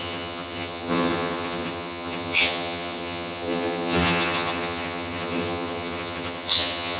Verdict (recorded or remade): remade